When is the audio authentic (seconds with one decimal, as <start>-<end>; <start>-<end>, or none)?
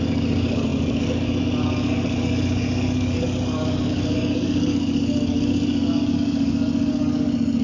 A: none